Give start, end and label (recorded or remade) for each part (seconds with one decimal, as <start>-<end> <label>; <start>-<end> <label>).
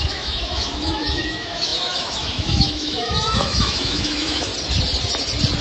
0.0-4.5 remade; 4.5-5.6 recorded